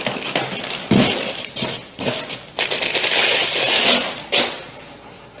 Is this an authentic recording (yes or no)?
yes